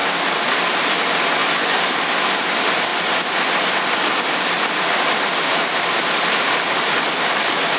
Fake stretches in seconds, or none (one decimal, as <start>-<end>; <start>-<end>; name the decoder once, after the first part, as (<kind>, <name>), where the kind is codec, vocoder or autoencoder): 1.4-1.9 (vocoder, Vocos)